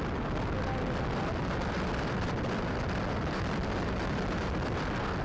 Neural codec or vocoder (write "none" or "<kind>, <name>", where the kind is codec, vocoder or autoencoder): none